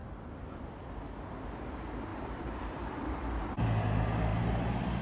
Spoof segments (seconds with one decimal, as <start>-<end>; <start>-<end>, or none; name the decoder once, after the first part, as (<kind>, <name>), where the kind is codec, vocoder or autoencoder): 0.0-0.6 (vocoder, BigVGAN v2); 2.1-3.6